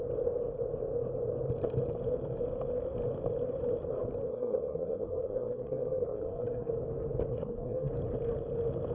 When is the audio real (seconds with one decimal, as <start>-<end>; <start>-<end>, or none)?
0.0-4.3; 6.7-7.3; 7.9-8.9